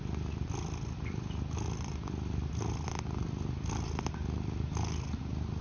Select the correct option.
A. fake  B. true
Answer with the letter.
B